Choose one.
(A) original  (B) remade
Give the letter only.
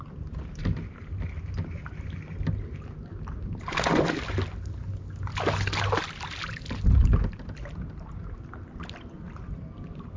A